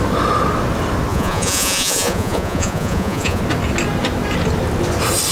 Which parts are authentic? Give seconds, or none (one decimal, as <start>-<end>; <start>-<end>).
0.0-1.1; 3.4-5.3